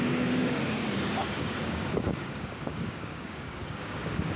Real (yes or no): no